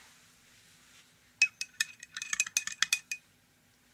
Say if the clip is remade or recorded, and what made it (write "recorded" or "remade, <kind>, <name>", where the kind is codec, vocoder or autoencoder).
recorded